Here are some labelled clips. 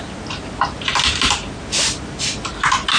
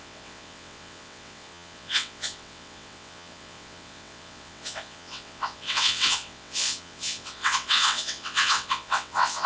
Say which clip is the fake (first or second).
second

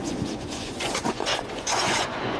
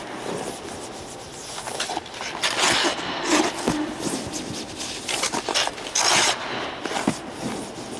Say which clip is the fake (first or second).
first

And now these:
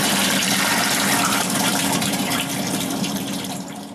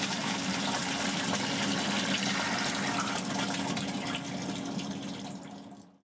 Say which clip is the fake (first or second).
first